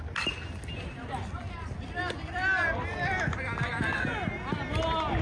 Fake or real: real